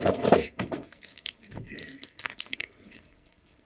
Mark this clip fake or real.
fake